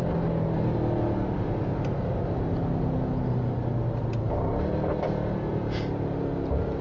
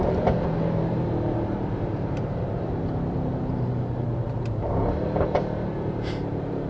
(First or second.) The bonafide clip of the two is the first